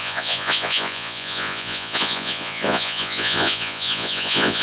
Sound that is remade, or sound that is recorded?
remade